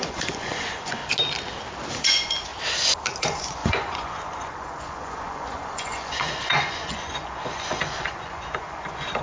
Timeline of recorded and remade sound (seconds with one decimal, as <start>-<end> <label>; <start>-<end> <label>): 0.0-1.0 remade; 1.0-1.9 recorded; 1.9-2.5 remade; 2.5-3.2 recorded; 3.2-9.2 remade